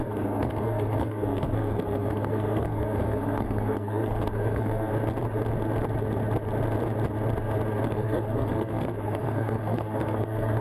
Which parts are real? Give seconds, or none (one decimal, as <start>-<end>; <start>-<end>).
4.9-7.9